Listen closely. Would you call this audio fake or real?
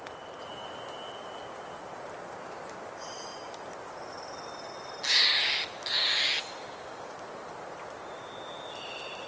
real